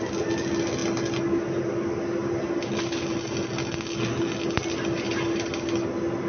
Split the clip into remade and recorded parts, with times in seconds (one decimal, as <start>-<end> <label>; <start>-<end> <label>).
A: 0.0-6.3 recorded